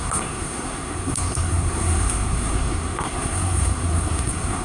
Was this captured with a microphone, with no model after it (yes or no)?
no